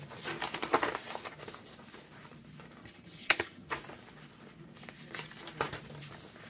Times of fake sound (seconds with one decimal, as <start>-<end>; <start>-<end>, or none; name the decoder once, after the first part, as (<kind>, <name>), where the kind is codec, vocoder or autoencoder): 2.8-3.7 (vocoder, HiFi-GAN)